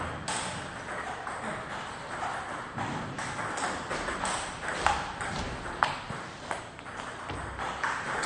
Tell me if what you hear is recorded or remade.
remade